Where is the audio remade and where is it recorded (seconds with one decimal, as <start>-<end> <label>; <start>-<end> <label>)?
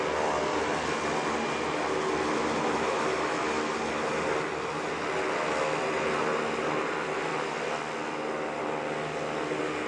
0.0-9.9 recorded